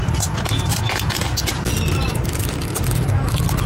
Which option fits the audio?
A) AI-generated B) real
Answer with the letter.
B